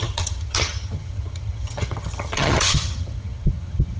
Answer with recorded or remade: remade